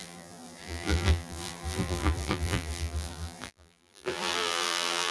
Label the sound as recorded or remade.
remade